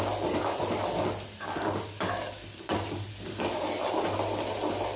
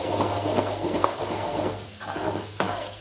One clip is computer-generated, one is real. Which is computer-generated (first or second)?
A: second